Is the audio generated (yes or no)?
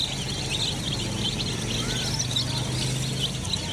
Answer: no